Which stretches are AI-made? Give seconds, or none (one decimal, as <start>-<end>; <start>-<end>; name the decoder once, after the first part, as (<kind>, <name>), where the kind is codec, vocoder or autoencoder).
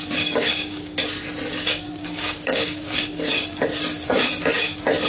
0.0-1.0 (codec, DAC); 1.7-3.3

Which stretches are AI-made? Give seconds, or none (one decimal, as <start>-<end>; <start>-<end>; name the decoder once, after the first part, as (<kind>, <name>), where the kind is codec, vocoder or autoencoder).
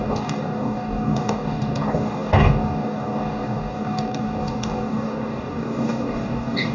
0.0-6.7 (codec, DAC)